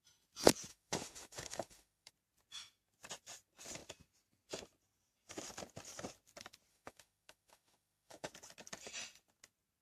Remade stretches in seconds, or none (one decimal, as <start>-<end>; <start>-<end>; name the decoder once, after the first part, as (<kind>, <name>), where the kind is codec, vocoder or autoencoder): 0.7-2.1 (autoencoder, DAC-VAE); 6.7-8.3